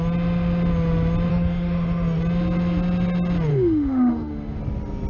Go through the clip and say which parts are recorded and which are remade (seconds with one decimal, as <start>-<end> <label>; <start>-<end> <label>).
0.0-1.3 recorded; 1.3-2.2 remade; 2.2-3.5 recorded; 3.5-4.6 remade; 4.6-5.1 recorded